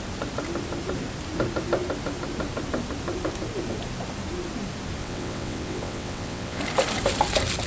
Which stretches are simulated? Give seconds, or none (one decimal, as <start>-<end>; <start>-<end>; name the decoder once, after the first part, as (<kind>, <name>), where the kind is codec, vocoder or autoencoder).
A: 5.0-6.6 (vocoder, WaveNeXt)